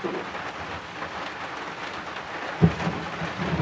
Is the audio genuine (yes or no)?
yes